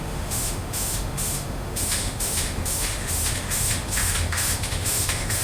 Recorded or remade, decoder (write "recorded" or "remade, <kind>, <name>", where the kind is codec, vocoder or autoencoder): remade, autoencoder, DAC-VAE